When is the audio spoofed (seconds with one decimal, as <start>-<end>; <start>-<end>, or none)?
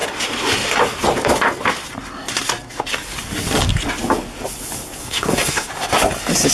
5.0-5.7